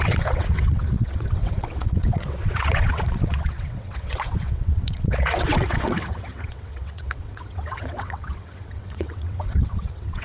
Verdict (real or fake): fake